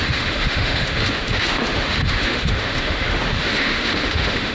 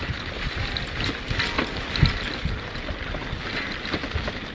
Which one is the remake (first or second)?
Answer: first